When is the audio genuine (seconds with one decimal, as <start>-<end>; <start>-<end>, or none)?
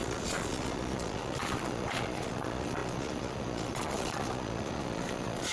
none